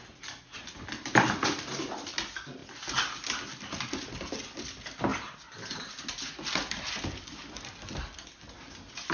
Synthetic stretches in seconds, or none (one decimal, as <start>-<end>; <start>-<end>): none